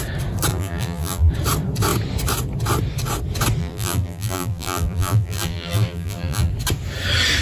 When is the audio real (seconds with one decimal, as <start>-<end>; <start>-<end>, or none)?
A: 0.0-0.5; 1.3-3.6; 6.5-7.4